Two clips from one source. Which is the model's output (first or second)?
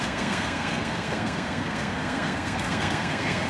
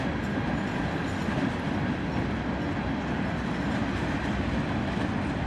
first